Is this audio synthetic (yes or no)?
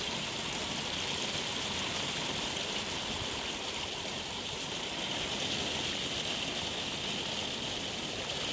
no